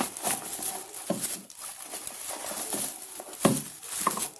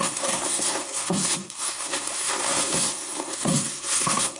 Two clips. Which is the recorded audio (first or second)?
first